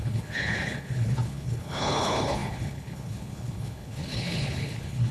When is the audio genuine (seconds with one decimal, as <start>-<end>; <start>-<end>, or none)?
none